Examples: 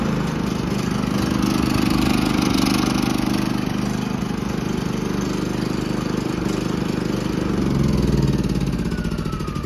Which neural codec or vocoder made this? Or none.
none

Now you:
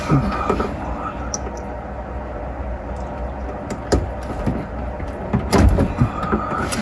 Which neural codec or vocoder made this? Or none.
none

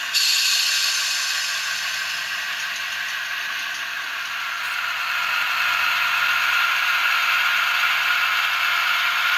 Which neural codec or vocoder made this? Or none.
none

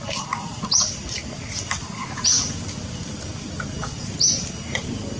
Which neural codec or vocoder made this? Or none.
none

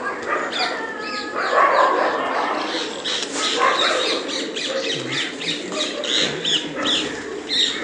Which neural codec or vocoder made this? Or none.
none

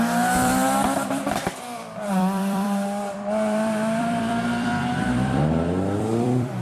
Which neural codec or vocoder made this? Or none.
vocoder, BigVGAN v2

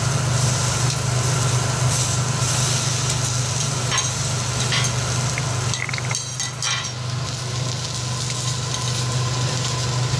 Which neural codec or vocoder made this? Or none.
none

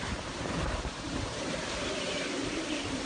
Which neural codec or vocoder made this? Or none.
vocoder, BigVGAN v2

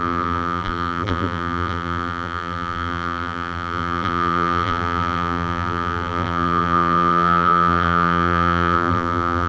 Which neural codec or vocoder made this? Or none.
vocoder, BigVGAN v2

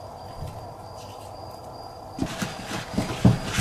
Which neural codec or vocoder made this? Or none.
none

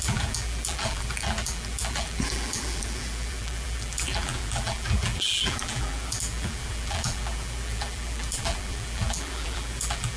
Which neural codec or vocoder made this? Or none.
vocoder, BigVGAN v2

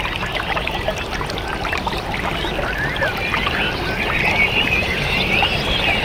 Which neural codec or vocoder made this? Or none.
none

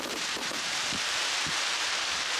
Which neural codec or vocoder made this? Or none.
vocoder, BigVGAN v2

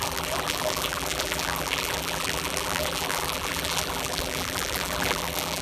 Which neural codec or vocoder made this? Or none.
vocoder, BigVGAN v2